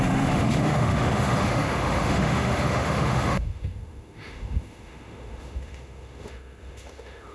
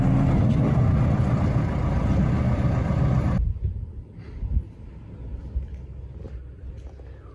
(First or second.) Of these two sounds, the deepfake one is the first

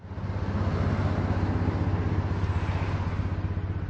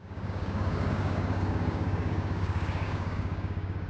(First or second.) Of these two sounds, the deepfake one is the second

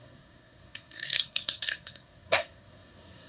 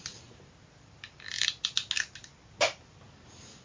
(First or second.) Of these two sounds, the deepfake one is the first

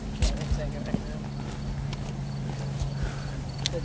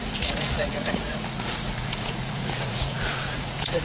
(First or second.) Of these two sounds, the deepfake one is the second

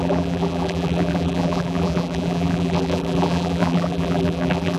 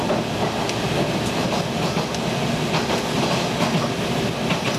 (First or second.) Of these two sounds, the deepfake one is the first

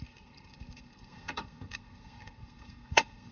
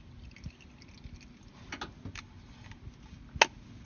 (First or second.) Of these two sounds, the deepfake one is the first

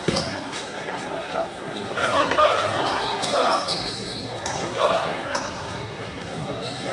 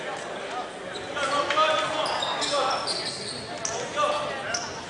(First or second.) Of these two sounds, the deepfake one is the first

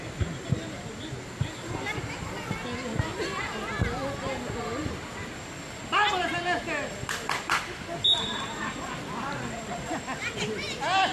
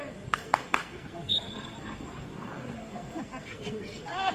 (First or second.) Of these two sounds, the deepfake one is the second